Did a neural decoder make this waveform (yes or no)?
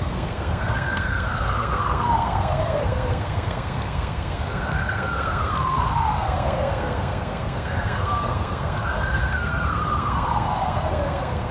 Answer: yes